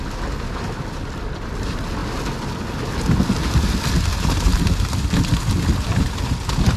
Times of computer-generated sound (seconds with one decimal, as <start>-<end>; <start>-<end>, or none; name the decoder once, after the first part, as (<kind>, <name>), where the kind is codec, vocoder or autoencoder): none